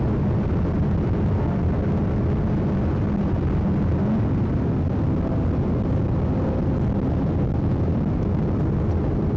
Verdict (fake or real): real